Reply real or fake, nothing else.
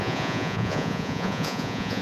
fake